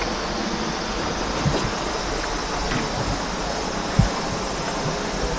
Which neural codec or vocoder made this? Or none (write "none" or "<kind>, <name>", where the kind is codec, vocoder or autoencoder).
none